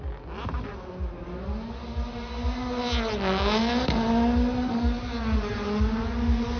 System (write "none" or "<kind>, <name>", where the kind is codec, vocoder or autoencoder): none